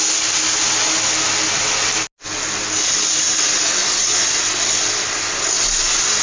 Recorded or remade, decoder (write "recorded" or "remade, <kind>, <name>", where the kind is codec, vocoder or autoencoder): recorded